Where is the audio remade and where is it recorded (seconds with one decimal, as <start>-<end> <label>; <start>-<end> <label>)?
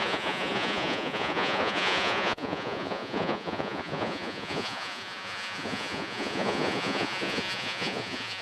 0.0-8.4 remade